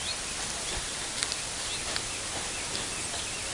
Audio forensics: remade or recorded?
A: recorded